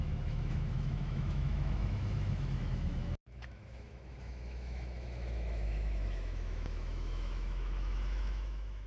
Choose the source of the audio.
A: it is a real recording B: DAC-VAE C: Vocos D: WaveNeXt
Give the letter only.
B